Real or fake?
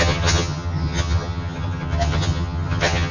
fake